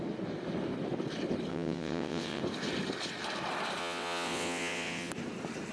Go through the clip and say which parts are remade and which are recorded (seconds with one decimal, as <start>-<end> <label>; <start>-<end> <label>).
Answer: 0.0-1.5 recorded; 1.5-2.4 remade; 2.4-3.8 recorded; 3.8-5.1 remade; 5.1-5.7 recorded